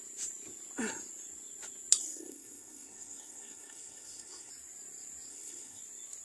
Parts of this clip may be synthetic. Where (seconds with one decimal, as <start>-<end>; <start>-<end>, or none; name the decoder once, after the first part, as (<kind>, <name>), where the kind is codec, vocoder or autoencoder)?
2.0-4.5 (codec, SNAC); 5.3-5.8